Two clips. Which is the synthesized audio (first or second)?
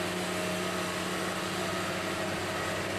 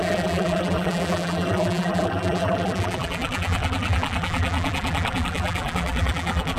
second